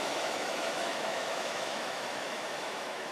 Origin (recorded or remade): remade